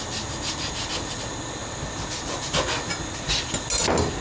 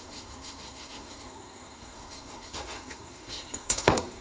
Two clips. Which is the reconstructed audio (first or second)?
second